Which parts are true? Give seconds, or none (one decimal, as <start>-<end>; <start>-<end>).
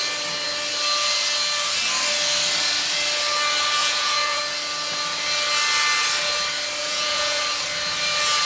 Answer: 0.0-3.8; 4.4-6.8; 7.4-8.5